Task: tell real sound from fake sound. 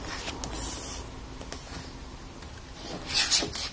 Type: real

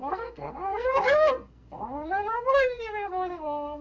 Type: fake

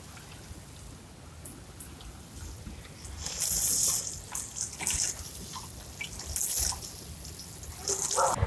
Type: real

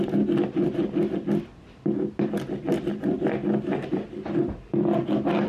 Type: real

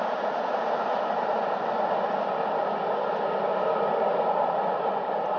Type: real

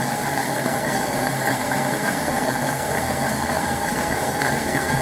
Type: fake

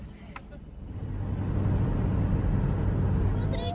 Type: real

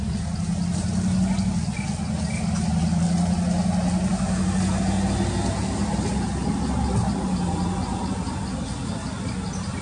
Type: real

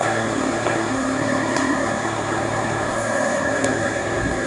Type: fake